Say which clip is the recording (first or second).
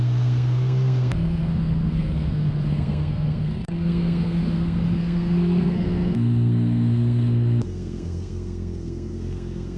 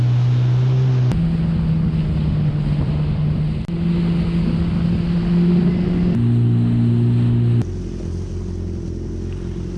second